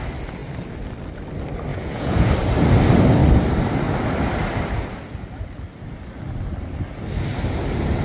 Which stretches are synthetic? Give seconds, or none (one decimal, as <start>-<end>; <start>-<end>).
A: 1.7-2.3